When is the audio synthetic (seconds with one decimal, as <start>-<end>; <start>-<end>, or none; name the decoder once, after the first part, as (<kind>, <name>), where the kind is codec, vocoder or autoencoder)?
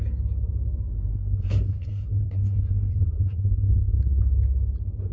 1.1-4.2 (codec, SNAC)